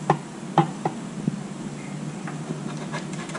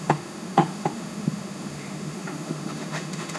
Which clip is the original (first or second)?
first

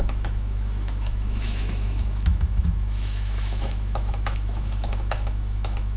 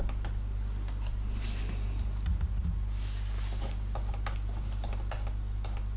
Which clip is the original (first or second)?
second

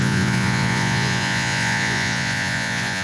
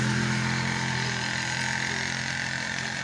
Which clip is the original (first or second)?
second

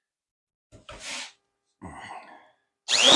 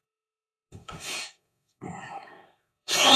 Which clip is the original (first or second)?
first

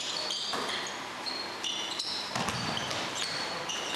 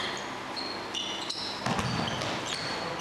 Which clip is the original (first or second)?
second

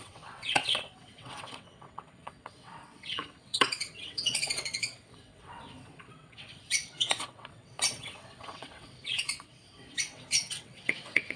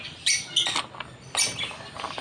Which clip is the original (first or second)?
second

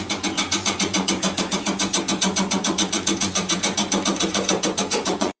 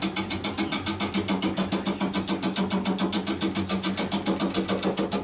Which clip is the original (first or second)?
second